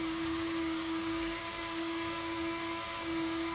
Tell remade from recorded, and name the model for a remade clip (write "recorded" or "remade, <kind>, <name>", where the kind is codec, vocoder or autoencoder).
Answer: remade, codec, DAC